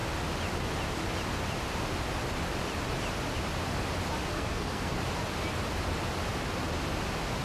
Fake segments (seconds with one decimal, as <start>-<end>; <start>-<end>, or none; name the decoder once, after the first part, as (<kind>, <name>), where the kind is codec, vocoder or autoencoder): 4.3-5.0 (codec, SNAC)